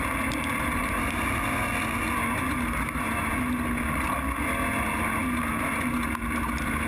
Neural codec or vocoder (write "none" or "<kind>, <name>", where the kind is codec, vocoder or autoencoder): none